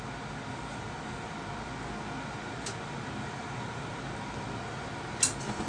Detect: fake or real real